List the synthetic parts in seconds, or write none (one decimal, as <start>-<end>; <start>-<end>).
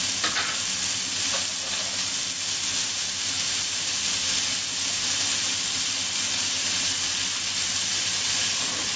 2.8-3.9